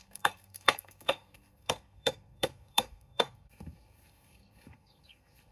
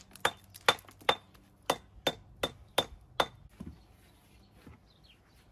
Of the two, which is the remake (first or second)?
first